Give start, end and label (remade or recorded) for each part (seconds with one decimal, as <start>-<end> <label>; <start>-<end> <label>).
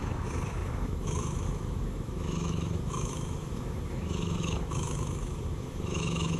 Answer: 0.0-6.4 remade